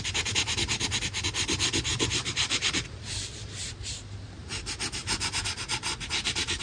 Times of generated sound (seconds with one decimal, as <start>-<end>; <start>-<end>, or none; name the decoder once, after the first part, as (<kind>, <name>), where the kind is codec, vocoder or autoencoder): 1.9-4.5 (vocoder, BigVGAN v2); 5.0-6.6